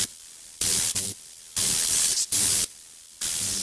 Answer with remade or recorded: recorded